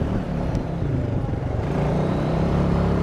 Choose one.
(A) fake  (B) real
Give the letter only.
A